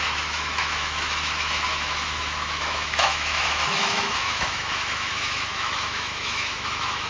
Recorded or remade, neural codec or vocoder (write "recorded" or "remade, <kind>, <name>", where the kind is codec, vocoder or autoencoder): remade, autoencoder, DAC-VAE